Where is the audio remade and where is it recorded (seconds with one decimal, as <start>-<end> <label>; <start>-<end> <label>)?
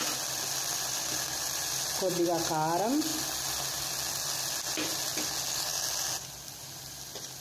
0.0-7.4 recorded